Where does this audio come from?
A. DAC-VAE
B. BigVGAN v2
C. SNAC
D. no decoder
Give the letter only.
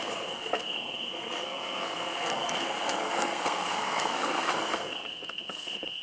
C